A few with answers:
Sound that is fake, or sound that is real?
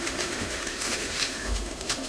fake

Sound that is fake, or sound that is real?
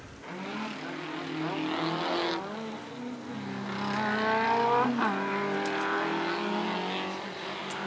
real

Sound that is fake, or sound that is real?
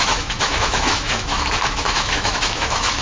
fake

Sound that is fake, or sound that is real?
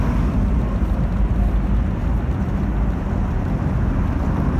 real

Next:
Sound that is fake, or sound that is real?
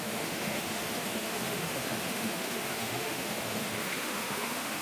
fake